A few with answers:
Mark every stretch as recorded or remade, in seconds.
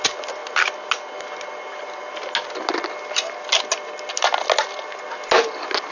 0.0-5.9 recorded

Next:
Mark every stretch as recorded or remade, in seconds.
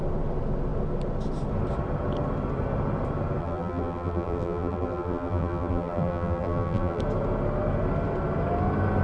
0.0-3.4 recorded; 3.4-7.0 remade; 7.0-9.0 recorded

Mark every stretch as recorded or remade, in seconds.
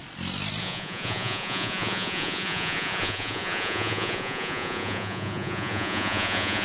0.0-0.6 recorded; 0.6-6.6 remade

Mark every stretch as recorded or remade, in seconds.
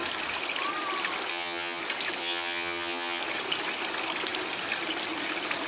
0.0-1.3 recorded; 1.3-1.8 remade; 1.8-2.2 recorded; 2.2-3.2 remade; 3.2-5.7 recorded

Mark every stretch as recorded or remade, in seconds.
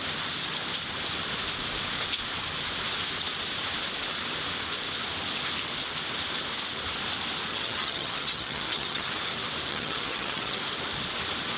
0.0-7.5 recorded; 7.5-9.1 remade; 9.1-9.7 recorded; 9.7-10.6 remade; 10.6-11.6 recorded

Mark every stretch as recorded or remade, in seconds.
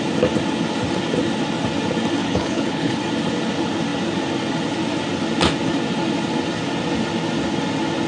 0.0-2.2 recorded; 2.2-3.0 remade; 3.0-8.1 recorded